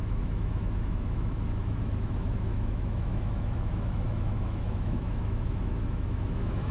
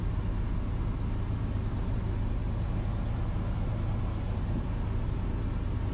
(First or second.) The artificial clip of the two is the first